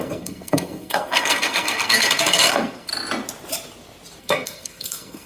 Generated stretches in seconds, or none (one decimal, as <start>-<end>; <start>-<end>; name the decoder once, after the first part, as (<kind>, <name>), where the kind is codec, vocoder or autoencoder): 0.0-2.9 (codec, SNAC); 4.2-5.3